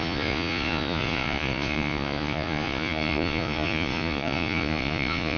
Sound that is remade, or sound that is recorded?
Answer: remade